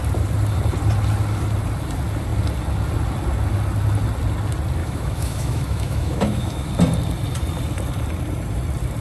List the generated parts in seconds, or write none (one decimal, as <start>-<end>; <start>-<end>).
4.8-6.7